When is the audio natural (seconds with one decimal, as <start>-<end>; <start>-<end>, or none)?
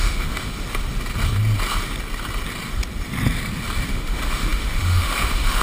0.5-3.9